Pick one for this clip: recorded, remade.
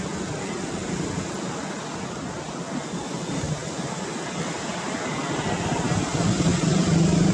recorded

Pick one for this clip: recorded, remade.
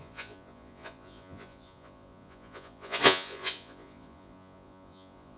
remade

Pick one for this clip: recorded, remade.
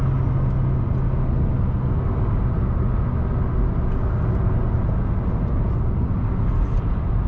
recorded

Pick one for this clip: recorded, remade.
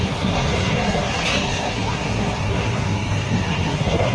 remade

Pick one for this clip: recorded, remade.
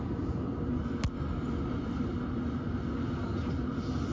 recorded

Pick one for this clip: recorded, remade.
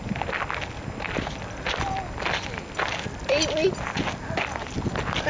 recorded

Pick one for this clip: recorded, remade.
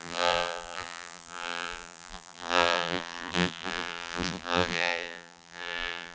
remade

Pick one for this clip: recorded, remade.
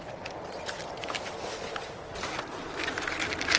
recorded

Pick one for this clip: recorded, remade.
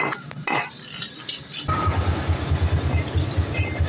recorded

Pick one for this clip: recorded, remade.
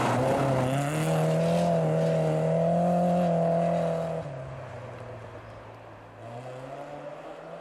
recorded